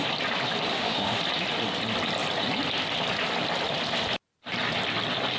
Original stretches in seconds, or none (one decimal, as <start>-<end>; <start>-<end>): 0.0-0.7; 1.2-5.4